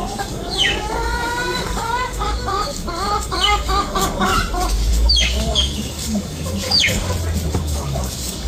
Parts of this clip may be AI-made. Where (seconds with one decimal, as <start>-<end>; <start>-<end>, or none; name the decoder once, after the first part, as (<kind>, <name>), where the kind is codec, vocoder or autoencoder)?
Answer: 0.0-4.3 (codec, DAC); 4.9-7.0; 7.6-8.5